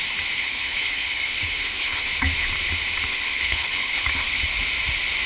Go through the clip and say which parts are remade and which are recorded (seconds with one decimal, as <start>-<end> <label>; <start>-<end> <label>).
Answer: 0.0-0.4 recorded; 0.4-2.1 remade; 2.1-3.1 recorded; 3.1-4.4 remade; 4.4-5.3 recorded